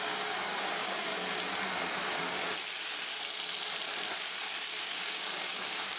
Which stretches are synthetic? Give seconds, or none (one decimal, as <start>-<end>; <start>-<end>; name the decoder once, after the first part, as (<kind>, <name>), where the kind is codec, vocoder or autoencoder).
0.0-1.1 (codec, DAC); 4.7-6.0